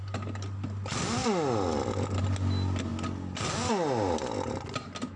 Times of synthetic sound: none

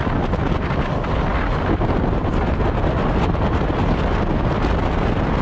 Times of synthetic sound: none

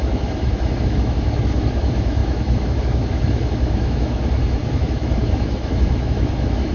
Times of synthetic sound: 0.0-6.7

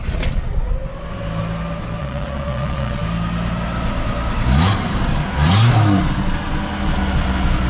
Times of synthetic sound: 0.0-0.7; 2.0-3.0

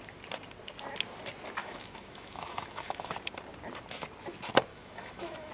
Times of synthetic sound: 1.6-3.1; 4.7-5.5

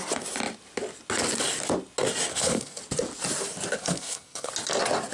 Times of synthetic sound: 2.3-2.8; 3.8-4.5